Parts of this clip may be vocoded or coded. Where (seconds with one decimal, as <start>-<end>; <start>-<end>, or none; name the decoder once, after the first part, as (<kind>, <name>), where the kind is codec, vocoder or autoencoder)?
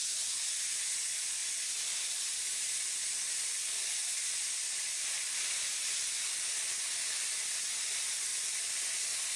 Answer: 1.4-6.4 (vocoder, BigVGAN v2); 8.3-8.9